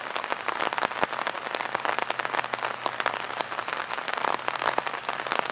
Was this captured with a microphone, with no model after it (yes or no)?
yes